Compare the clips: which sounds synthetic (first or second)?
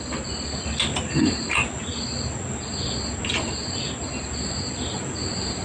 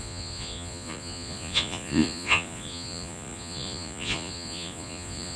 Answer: second